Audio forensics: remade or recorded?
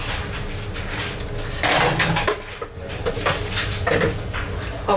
recorded